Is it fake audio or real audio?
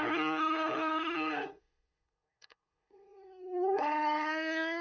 fake